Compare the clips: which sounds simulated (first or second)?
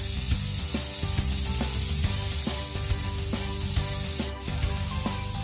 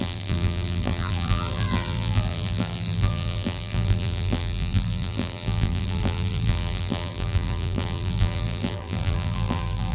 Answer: second